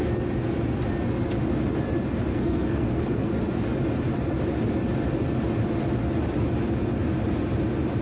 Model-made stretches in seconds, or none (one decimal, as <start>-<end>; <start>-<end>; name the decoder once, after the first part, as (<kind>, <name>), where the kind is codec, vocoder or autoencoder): 2.3-3.3 (codec, SNAC)